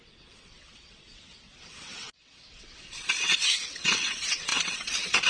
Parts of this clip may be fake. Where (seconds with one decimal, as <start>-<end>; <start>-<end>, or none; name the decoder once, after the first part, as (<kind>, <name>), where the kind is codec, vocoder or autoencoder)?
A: 0.0-5.3 (vocoder, WaveNeXt)